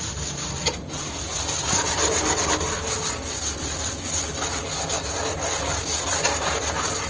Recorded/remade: recorded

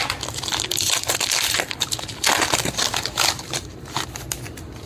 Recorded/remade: recorded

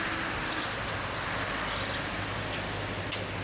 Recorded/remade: recorded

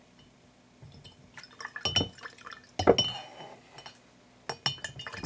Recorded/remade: recorded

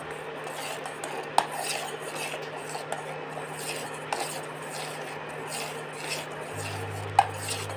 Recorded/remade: recorded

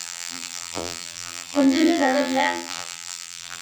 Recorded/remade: remade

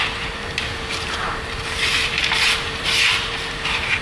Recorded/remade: remade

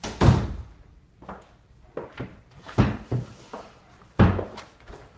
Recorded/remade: remade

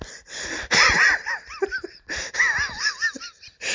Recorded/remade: remade